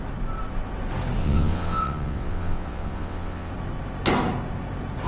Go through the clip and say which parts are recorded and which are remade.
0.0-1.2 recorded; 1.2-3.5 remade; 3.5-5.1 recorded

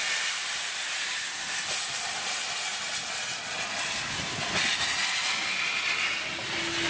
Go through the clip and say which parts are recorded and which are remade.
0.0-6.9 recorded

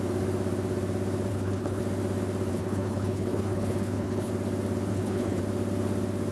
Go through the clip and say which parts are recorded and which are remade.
0.0-1.3 recorded; 1.3-1.8 remade; 1.8-2.5 recorded; 2.5-4.3 remade; 4.3-4.9 recorded; 4.9-5.4 remade; 5.4-6.3 recorded

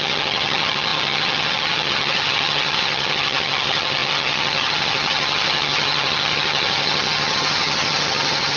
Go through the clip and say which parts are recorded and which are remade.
0.0-8.6 remade

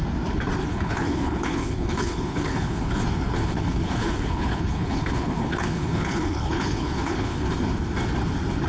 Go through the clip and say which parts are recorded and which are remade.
0.0-0.6 recorded; 0.6-3.0 remade; 3.0-3.4 recorded; 3.4-7.5 remade; 7.5-8.7 recorded

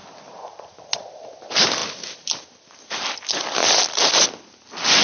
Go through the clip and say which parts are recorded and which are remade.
0.0-5.0 recorded